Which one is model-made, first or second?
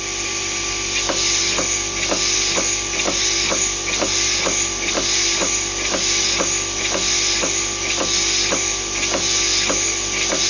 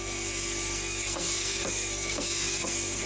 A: second